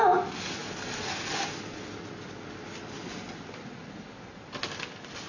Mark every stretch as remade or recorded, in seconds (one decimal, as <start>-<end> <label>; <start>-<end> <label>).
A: 0.0-5.3 recorded